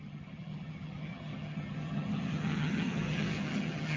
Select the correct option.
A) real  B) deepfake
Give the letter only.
B